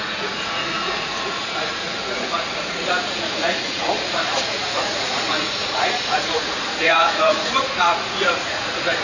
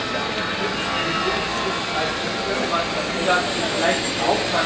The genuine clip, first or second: second